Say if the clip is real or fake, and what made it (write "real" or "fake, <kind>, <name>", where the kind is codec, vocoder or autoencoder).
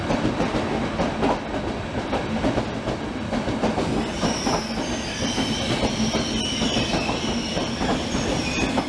real